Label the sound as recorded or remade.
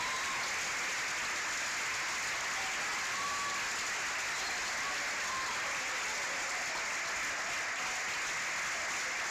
recorded